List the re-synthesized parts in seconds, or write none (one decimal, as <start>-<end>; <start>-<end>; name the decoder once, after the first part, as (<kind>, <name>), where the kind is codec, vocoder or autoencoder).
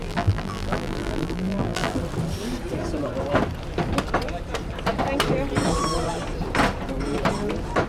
0.0-2.0 (vocoder, BigVGAN v2)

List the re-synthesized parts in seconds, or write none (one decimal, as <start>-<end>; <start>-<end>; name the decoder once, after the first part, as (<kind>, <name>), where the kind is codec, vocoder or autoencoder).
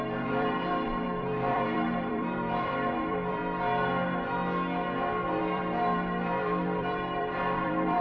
0.0-3.4 (vocoder, BigVGAN v2); 5.4-8.0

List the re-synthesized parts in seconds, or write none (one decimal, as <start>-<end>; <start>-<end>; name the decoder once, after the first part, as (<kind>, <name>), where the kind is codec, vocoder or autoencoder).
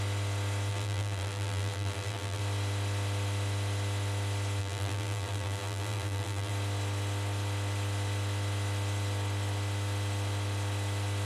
0.7-2.4 (vocoder, BigVGAN v2); 4.6-6.5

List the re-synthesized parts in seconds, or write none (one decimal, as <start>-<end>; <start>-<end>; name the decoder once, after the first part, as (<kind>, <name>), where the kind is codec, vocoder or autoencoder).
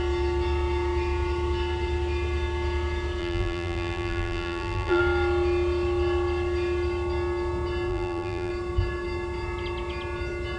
3.2-5.0 (vocoder, BigVGAN v2); 7.9-8.5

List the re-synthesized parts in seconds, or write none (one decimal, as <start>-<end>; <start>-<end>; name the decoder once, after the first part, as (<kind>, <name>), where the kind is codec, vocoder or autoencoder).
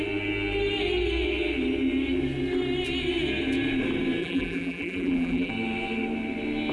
4.2-5.5 (vocoder, BigVGAN v2)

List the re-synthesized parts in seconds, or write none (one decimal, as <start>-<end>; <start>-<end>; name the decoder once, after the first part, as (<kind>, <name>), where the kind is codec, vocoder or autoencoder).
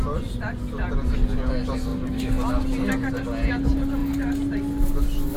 none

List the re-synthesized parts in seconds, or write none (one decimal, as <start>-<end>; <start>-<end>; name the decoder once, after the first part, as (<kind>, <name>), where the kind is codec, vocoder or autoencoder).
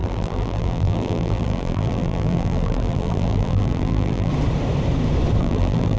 0.0-4.3 (vocoder, BigVGAN v2); 5.4-6.0